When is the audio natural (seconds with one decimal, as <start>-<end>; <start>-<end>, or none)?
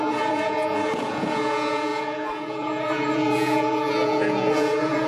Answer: none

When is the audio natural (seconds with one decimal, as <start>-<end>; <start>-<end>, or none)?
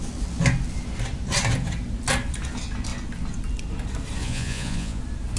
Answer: 0.0-4.2; 5.0-5.4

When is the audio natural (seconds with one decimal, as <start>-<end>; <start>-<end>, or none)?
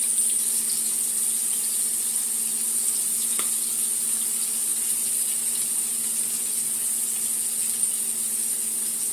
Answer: 0.0-9.1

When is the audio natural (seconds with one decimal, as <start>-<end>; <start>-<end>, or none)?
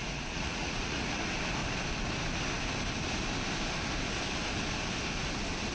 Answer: 1.2-5.7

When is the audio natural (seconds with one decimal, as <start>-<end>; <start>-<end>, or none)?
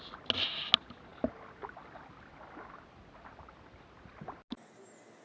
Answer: 0.0-5.2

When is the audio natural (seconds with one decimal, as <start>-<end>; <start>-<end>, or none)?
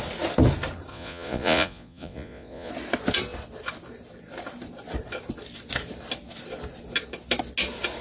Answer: 0.0-0.9; 2.7-8.0